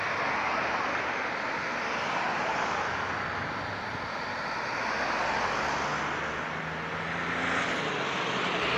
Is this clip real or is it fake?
real